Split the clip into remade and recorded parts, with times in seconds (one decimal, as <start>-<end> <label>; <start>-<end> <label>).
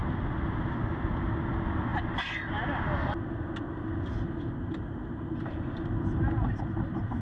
0.0-7.2 recorded